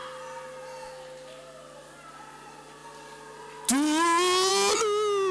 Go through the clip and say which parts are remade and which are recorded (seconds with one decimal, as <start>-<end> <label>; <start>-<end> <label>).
0.0-5.3 recorded